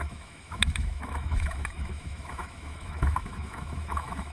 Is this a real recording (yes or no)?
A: no